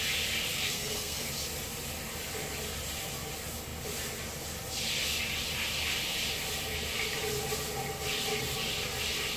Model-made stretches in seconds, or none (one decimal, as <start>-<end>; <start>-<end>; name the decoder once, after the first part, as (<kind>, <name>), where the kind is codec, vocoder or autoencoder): 0.5-1.3 (codec, SNAC)